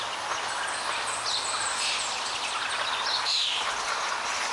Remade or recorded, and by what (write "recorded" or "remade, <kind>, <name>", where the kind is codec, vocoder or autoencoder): recorded